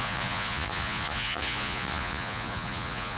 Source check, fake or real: fake